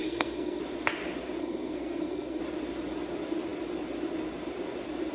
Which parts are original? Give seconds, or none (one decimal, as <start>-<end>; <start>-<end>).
0.6-1.4; 2.4-5.1